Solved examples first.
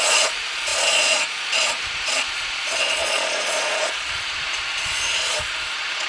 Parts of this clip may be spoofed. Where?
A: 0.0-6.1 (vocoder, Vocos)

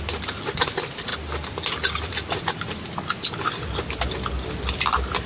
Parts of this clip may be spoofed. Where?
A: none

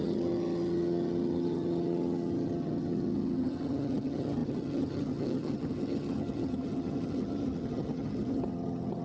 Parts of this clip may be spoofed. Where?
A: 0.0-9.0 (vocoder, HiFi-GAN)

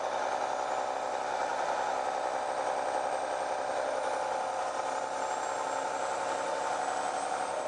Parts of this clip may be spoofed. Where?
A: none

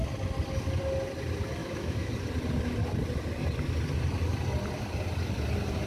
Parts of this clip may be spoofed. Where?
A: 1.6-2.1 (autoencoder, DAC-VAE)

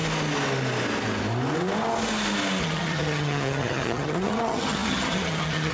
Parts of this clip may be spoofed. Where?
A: 2.6-5.7 (vocoder, HiFi-GAN)